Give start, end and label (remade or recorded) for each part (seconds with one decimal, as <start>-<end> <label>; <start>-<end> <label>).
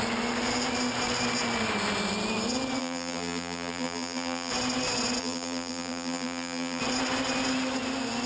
0.0-2.8 recorded; 2.8-4.5 remade; 4.5-5.2 recorded; 5.2-6.8 remade; 6.8-8.3 recorded